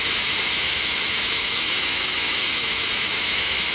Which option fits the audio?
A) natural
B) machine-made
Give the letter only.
B